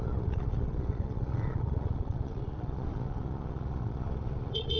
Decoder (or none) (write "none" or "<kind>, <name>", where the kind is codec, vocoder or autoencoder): vocoder, Vocos